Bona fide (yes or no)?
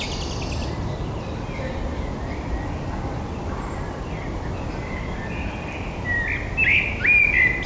yes